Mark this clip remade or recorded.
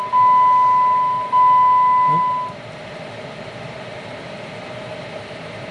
recorded